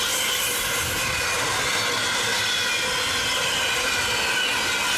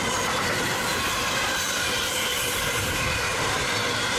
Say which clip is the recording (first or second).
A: first